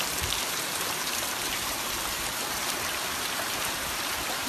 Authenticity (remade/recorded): remade